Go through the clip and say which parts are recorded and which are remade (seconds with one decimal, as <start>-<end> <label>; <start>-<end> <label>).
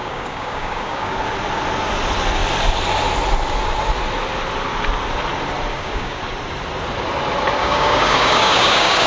0.0-1.2 remade; 1.2-5.7 recorded; 5.7-6.2 remade; 6.2-7.6 recorded; 7.6-9.1 remade